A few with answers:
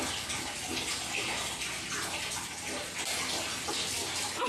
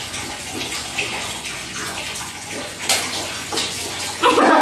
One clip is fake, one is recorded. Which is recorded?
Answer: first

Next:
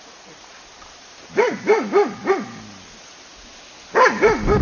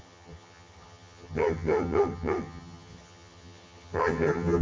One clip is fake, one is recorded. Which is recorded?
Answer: first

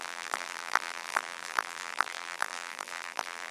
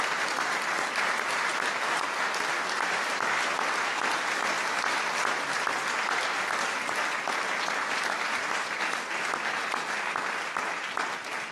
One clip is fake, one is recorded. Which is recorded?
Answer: second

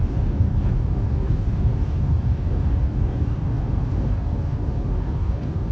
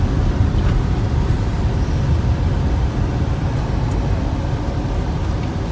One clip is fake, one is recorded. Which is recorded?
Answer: second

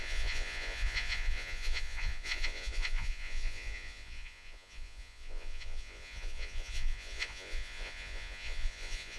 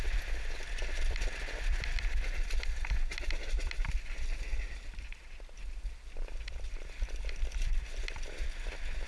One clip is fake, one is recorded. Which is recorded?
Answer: second